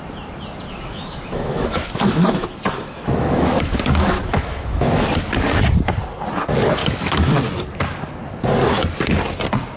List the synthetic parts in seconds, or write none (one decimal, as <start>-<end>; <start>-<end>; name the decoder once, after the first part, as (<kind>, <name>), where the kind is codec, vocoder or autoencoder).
0.7-5.1 (autoencoder, DAC-VAE); 6.8-7.3